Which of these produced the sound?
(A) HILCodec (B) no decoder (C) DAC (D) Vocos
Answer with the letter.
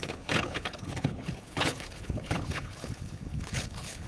A